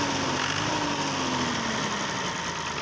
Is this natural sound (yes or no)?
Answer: yes